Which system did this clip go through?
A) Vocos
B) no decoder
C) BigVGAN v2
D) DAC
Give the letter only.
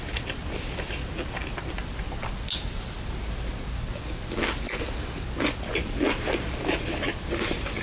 B